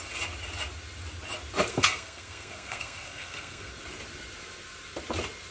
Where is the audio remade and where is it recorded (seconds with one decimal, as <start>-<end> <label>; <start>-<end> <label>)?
0.0-1.7 recorded; 1.7-3.7 remade; 3.7-5.5 recorded